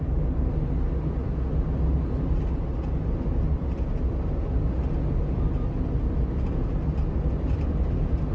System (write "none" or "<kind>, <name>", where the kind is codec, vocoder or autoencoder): none